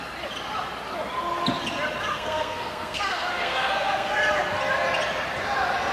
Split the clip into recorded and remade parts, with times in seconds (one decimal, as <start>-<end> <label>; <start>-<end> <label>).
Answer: 0.0-2.1 recorded; 2.1-4.2 remade; 4.2-5.9 recorded